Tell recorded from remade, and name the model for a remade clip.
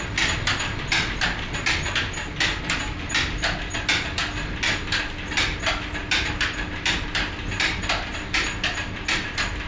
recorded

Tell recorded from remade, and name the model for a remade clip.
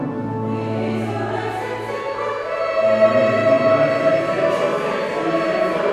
recorded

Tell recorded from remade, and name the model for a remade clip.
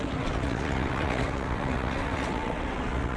remade, vocoder, WaveNeXt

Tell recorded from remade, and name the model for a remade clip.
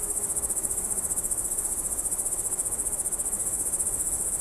remade, autoencoder, DAC-VAE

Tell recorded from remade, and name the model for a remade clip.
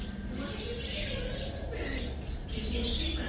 recorded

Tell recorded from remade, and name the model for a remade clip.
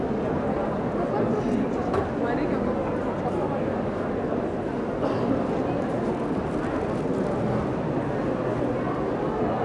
recorded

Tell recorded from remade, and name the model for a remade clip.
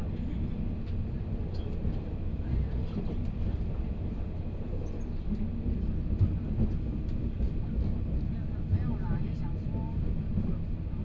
recorded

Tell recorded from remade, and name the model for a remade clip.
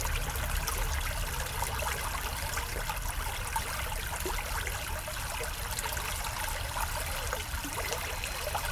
recorded